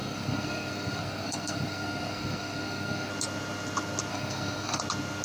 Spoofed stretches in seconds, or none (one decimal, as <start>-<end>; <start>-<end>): 0.0-3.1; 4.1-4.8